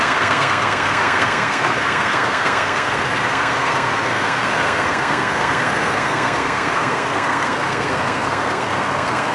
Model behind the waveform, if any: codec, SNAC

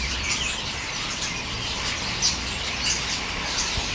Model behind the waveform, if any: vocoder, BigVGAN v2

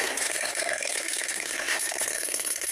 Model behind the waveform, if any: codec, SNAC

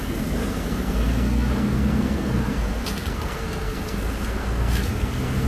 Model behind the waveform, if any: codec, SNAC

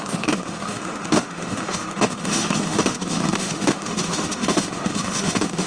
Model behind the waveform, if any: autoencoder, DAC-VAE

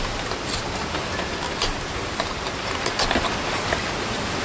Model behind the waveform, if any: none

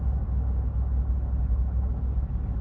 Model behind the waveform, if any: none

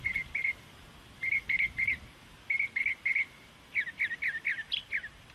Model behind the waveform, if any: none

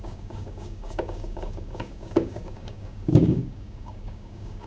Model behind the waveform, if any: codec, DAC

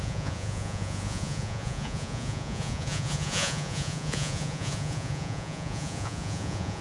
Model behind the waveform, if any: vocoder, Vocos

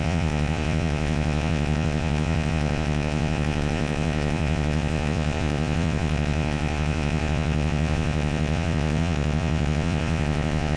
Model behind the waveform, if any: vocoder, Vocos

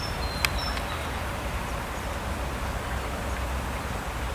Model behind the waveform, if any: none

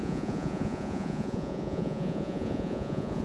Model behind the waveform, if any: vocoder, Vocos